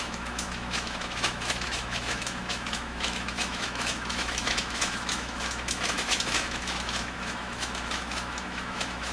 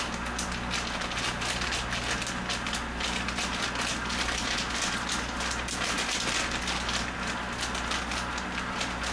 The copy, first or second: first